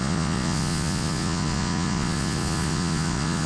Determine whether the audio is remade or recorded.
remade